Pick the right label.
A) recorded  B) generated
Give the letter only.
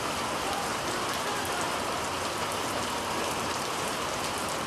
A